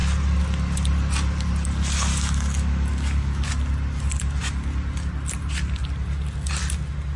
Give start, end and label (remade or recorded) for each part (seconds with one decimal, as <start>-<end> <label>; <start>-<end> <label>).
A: 0.0-2.1 recorded; 2.1-3.5 remade; 3.5-7.2 recorded